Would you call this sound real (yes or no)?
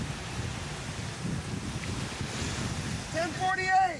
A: yes